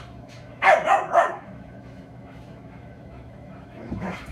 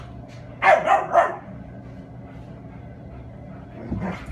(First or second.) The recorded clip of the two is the second